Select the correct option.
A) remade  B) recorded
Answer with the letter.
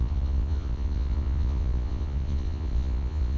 A